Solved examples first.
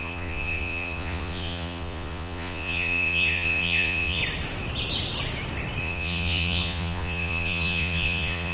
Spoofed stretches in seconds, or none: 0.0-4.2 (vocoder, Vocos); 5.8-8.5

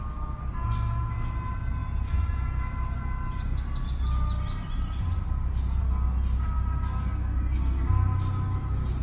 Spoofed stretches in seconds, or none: none

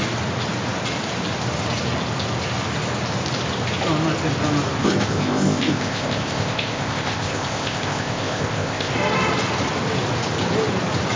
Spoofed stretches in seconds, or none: 4.8-8.9 (codec, ZipCodec)

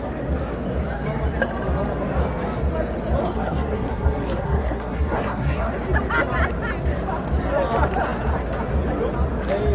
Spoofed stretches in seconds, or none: 3.2-5.7 (codec, SNAC)

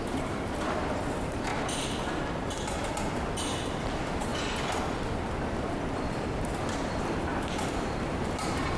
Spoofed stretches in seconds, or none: 0.0-1.5 (vocoder, BigVGAN v2); 3.0-4.3; 7.0-8.8

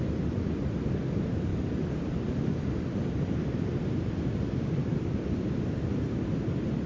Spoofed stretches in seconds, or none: 1.5-5.6 (vocoder, BigVGAN v2)

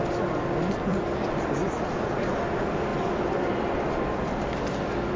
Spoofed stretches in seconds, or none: 0.9-1.5 (vocoder, BigVGAN v2); 2.9-4.0

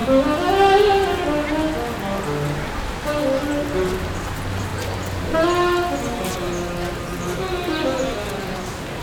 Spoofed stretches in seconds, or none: none